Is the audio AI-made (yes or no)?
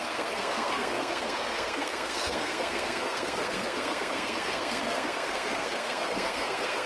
yes